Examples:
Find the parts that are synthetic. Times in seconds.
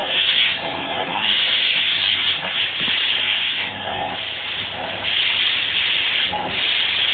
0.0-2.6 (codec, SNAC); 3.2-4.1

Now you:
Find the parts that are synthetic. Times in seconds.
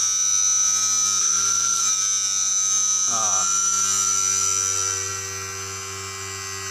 1.2-1.8 (codec, SNAC)